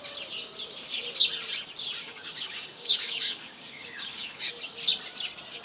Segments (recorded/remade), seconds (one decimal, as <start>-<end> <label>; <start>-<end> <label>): 0.0-2.0 recorded; 2.0-4.5 remade; 4.5-5.6 recorded